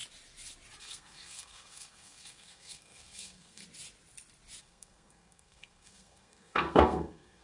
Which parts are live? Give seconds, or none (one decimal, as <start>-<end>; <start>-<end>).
0.0-0.8; 3.6-4.6